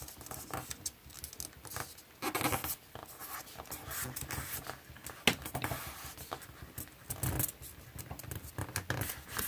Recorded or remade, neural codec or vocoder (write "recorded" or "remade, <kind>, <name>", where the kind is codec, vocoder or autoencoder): recorded